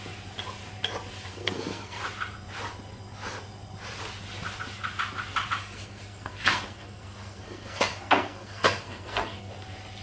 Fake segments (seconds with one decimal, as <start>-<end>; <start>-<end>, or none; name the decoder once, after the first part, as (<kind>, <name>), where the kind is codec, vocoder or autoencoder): 1.3-2.0 (codec, SNAC); 5.6-9.5